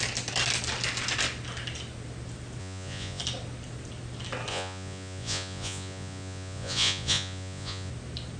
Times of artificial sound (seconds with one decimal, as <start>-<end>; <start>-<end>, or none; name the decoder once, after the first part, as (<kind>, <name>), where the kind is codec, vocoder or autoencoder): 2.6-3.2 (vocoder, Vocos); 4.5-7.9